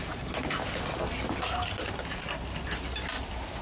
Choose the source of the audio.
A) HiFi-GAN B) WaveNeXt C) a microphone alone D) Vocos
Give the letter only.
C